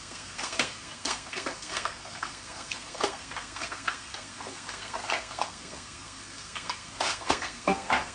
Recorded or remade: remade